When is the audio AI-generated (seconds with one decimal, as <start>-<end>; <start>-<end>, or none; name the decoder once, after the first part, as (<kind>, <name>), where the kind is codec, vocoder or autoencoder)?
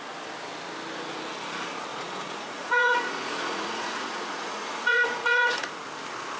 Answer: 1.9-5.7 (vocoder, Vocos)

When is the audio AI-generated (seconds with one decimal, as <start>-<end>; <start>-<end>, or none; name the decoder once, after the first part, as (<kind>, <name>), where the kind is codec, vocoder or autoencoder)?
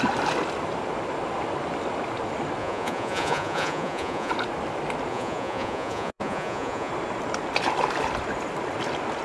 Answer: 2.6-4.3 (vocoder, Vocos); 5.1-6.9